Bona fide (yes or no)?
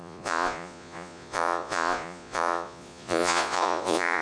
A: no